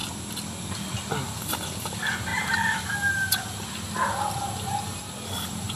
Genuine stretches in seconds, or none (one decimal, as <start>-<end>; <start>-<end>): 0.0-1.2